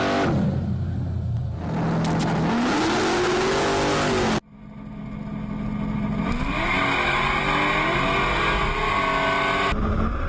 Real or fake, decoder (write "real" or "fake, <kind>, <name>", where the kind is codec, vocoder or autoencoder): real